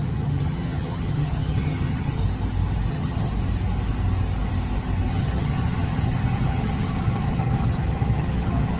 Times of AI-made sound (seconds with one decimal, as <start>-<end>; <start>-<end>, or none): 0.0-2.2; 2.9-3.3; 5.1-8.8